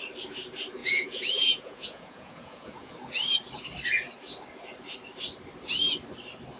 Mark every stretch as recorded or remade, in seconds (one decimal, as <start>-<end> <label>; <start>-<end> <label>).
0.0-0.8 recorded; 0.8-2.9 remade; 2.9-6.6 recorded